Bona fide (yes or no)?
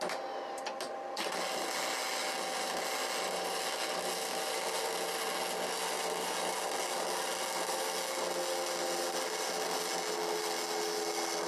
yes